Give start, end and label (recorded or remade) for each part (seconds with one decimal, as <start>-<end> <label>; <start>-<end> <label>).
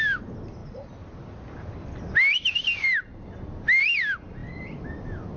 0.0-0.6 remade; 0.6-3.8 recorded; 3.8-5.4 remade